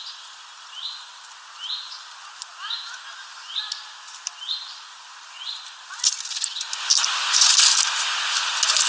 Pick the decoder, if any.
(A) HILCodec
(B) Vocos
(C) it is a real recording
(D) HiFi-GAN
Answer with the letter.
C